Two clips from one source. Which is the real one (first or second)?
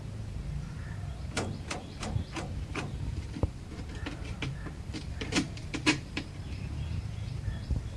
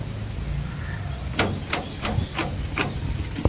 second